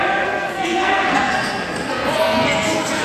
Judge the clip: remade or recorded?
remade